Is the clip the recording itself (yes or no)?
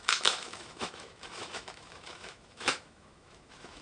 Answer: no